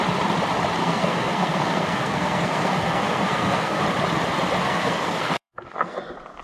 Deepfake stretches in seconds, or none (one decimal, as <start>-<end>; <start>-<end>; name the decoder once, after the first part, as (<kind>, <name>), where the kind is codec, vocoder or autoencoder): 0.8-3.8 (codec, SNAC); 4.6-6.0